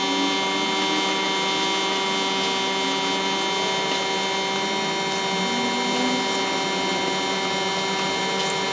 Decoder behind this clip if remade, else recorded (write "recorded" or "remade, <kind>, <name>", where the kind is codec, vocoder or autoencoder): recorded